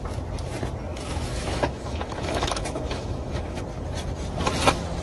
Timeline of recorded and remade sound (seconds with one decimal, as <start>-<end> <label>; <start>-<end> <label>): 0.0-0.9 recorded; 0.9-3.6 remade; 3.6-5.0 recorded